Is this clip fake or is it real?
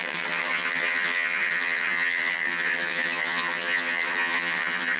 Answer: fake